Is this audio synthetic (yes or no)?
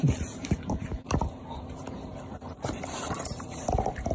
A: yes